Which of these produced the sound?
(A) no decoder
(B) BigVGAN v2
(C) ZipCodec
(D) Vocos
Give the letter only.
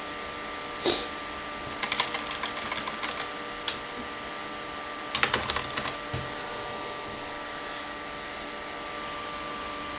A